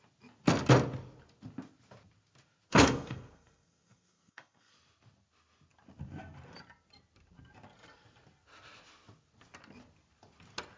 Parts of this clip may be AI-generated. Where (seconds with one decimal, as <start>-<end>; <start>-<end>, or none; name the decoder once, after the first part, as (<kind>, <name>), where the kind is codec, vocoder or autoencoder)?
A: 2.7-4.7 (codec, SNAC)